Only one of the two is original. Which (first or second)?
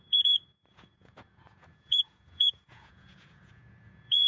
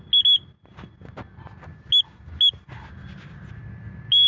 second